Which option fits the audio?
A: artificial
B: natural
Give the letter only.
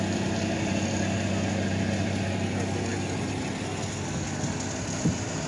B